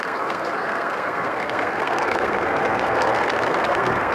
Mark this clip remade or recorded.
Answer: remade